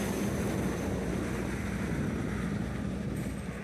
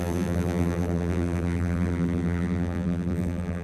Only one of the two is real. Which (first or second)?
first